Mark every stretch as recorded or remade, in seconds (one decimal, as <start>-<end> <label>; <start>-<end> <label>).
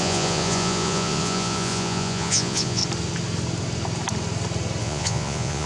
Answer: 0.0-2.8 remade; 2.8-4.8 recorded; 4.8-5.7 remade